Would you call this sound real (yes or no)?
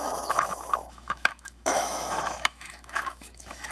no